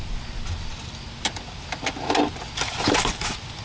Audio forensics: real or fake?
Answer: real